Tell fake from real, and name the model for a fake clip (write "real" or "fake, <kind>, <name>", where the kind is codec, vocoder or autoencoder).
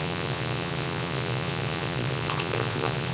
fake, vocoder, Vocos